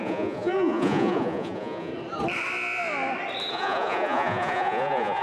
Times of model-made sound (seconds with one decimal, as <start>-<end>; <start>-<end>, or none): 0.0-1.9; 3.5-5.2